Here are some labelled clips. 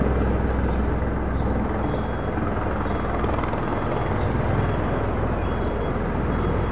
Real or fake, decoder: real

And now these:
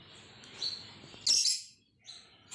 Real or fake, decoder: real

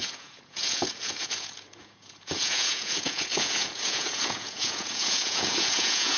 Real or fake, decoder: fake, vocoder, Vocos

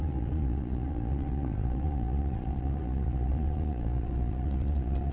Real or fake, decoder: fake, vocoder, Vocos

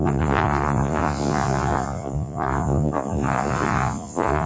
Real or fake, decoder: fake, vocoder, Vocos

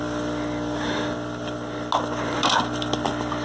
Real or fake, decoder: real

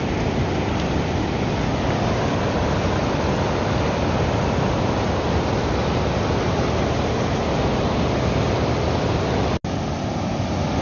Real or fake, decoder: real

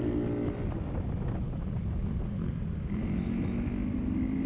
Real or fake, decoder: real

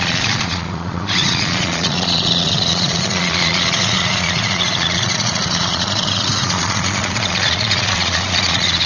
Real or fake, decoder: fake, vocoder, Vocos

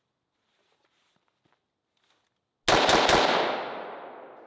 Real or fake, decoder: real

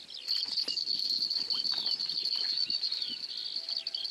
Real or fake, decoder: real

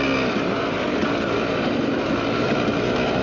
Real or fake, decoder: real